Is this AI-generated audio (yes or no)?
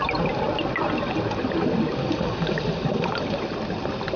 no